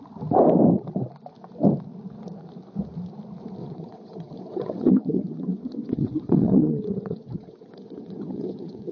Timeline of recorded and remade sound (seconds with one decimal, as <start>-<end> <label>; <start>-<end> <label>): 0.0-3.6 recorded; 3.6-8.9 remade